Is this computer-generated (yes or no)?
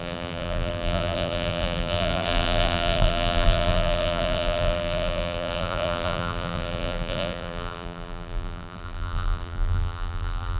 yes